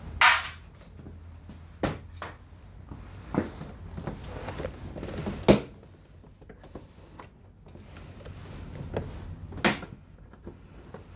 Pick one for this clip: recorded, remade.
recorded